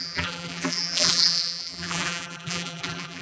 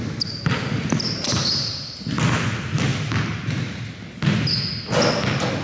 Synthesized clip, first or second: first